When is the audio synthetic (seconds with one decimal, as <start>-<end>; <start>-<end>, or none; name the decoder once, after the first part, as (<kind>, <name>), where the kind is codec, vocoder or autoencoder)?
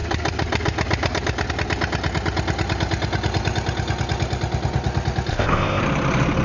5.3-5.8 (codec, ZipCodec)